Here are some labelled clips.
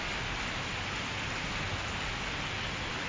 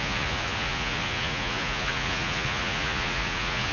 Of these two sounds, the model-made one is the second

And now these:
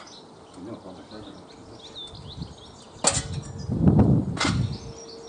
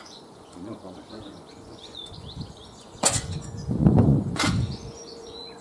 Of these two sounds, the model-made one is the second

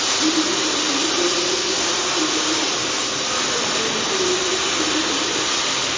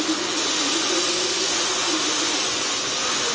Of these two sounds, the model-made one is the second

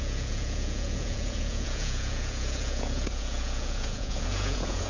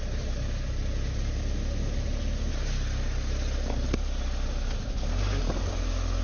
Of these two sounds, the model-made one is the first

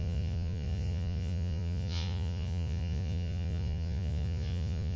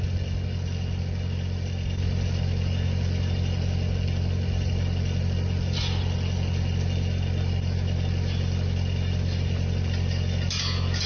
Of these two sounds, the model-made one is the first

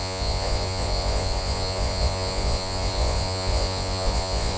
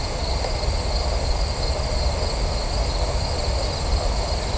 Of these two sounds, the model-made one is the first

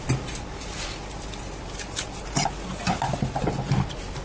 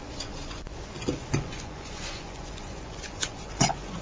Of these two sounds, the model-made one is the second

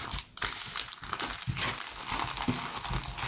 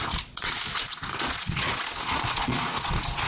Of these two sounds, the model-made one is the second